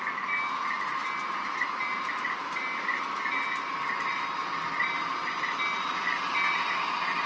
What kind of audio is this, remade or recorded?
recorded